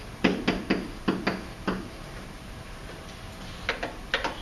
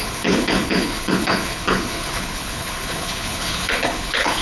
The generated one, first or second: second